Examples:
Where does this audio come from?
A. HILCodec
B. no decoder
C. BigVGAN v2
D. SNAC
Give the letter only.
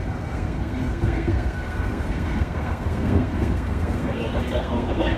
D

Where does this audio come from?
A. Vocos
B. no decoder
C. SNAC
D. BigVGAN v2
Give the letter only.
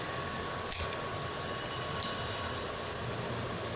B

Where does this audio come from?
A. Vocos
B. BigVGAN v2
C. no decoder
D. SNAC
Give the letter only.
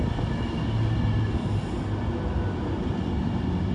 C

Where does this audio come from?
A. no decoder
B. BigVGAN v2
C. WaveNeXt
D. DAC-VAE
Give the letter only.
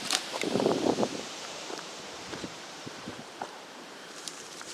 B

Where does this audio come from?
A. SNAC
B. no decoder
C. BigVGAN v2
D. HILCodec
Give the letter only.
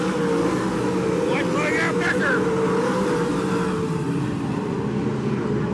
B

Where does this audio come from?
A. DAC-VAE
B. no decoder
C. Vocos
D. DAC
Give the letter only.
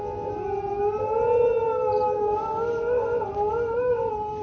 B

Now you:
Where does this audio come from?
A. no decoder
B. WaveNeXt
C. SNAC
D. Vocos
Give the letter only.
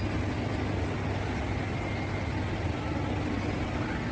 A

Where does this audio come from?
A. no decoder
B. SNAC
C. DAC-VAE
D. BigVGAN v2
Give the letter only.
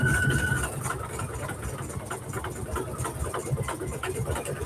A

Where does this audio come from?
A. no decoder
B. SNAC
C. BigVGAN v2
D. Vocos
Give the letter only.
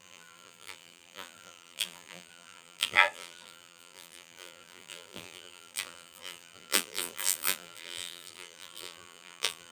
C